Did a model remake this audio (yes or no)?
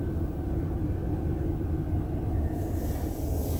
no